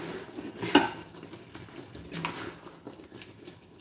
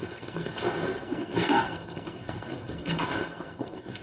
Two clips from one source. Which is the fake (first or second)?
second